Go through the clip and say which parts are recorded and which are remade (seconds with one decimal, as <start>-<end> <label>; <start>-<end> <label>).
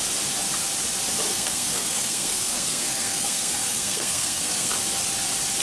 0.0-1.3 recorded; 1.3-4.7 remade; 4.7-5.6 recorded